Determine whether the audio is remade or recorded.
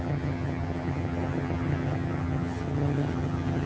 remade